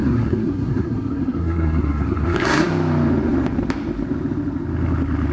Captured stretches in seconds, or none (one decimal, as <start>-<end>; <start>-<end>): 2.7-5.3